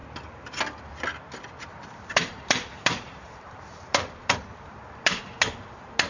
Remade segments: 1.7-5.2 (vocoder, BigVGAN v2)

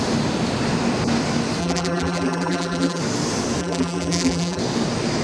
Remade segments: 1.6-3.0 (vocoder, BigVGAN v2); 3.6-4.6